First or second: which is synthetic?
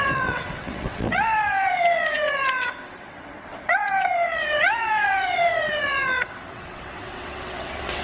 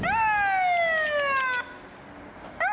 first